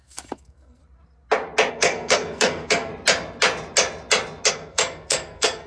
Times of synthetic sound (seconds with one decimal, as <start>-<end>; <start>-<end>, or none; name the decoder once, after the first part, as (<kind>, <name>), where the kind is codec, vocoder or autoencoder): 0.0-0.8 (codec, SNAC); 1.7-2.9; 4.5-5.7